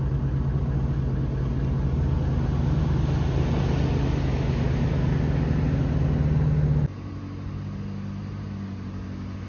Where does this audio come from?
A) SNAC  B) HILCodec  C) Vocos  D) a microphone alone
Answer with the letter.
D